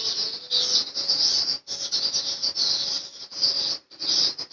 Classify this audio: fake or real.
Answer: real